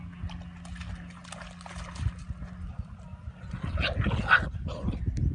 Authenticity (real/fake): real